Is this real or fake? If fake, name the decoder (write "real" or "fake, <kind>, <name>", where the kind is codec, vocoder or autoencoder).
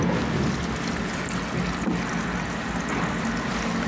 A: real